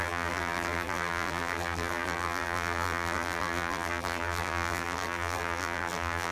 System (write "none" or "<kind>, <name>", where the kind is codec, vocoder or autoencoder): vocoder, BigVGAN v2